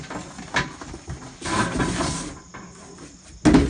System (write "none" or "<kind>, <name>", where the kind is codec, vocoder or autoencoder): none